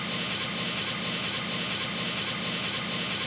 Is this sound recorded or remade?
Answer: recorded